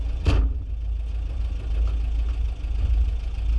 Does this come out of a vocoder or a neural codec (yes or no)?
no